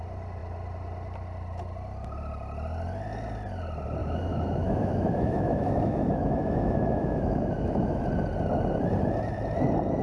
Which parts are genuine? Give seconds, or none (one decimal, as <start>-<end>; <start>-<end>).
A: 0.0-4.0; 8.0-10.0